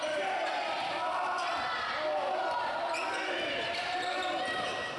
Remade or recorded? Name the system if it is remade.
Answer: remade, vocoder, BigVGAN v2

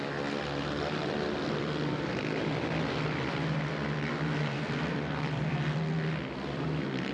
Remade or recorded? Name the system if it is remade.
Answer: remade, vocoder, BigVGAN v2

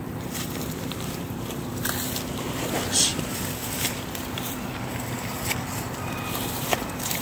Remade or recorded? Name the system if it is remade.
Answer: remade, vocoder, BigVGAN v2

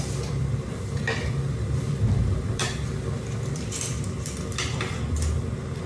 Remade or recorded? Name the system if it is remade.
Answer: remade, vocoder, BigVGAN v2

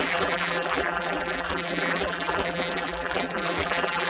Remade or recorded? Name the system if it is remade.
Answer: remade, vocoder, BigVGAN v2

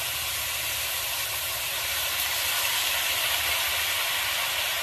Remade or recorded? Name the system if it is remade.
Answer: recorded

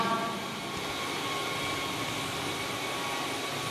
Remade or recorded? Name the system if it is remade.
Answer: recorded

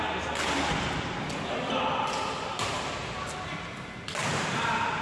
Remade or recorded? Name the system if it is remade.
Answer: recorded